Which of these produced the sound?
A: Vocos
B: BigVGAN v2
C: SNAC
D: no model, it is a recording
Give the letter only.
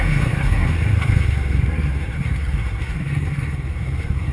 C